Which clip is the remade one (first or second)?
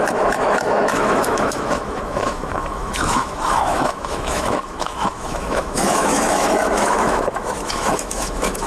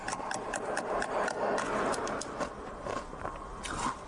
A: first